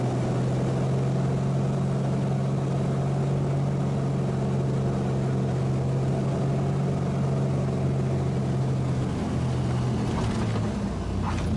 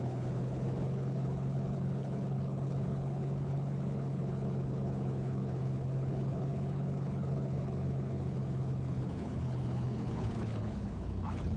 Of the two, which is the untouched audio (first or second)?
first